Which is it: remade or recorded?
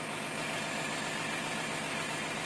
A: recorded